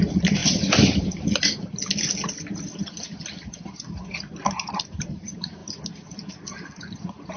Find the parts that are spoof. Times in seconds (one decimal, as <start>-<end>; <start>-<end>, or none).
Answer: 0.0-0.4; 4.7-5.6; 6.3-7.4